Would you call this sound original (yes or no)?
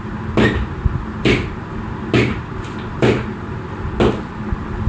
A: yes